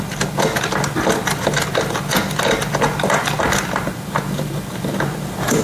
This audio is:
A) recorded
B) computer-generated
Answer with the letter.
A